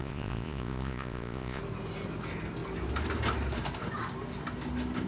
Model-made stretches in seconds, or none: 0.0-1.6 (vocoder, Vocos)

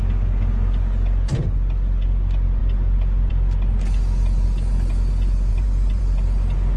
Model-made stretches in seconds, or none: 5.5-6.0 (vocoder, BigVGAN v2)

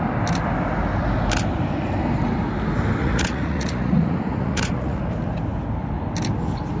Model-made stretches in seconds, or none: 3.0-5.0 (vocoder, Vocos)